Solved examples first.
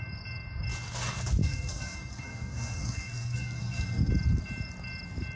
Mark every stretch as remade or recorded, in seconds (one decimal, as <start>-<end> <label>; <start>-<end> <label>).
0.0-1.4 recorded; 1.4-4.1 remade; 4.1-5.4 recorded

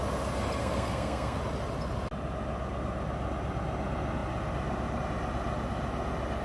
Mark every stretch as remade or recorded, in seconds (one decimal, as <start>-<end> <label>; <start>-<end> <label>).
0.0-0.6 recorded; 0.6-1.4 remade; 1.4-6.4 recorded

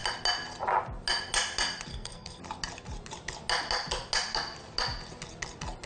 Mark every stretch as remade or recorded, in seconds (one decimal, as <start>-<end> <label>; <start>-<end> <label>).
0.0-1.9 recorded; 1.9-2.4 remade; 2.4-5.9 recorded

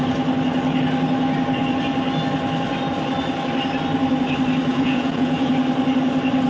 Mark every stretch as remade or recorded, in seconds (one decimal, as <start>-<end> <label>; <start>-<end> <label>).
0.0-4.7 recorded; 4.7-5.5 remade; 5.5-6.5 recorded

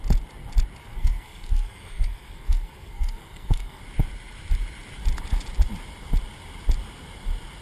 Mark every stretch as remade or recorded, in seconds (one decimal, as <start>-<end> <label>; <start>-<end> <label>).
0.0-0.8 recorded; 0.8-3.8 remade; 3.8-7.6 recorded

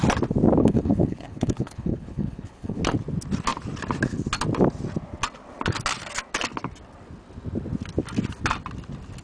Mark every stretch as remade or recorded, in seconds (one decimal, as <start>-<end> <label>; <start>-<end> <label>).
0.0-0.6 recorded; 0.6-2.8 remade; 2.8-9.2 recorded